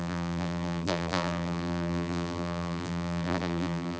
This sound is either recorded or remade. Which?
remade